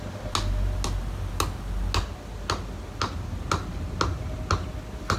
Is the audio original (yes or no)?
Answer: yes